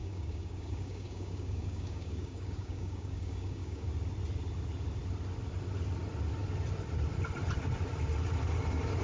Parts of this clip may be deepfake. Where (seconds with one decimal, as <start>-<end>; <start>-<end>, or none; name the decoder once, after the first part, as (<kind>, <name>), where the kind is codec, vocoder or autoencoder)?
0.0-3.9 (codec, DAC)